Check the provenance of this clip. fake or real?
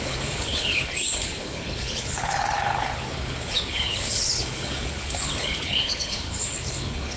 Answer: fake